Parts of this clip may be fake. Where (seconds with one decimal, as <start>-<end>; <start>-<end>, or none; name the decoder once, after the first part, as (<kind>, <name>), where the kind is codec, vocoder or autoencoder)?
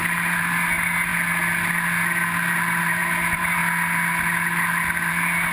0.0-1.1 (vocoder, BigVGAN v2); 2.8-3.6; 5.1-5.5